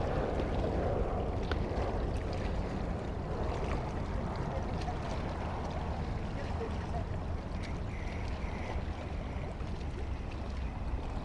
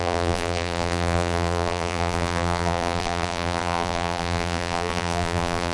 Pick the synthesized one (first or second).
second